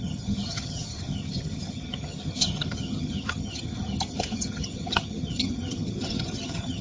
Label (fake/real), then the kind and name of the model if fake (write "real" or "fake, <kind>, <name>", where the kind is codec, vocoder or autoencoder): fake, vocoder, HiFi-GAN